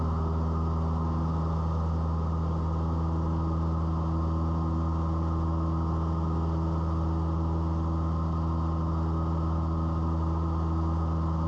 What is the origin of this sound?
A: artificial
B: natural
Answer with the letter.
B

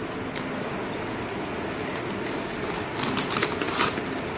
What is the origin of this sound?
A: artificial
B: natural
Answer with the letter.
B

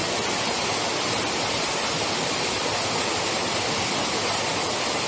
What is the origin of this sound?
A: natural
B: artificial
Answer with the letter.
A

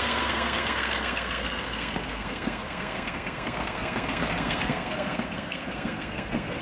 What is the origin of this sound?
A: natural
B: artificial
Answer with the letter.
B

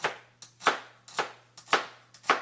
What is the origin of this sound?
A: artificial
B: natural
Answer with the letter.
B